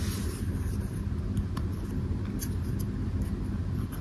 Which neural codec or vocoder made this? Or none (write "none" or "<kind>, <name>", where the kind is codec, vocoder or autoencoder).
none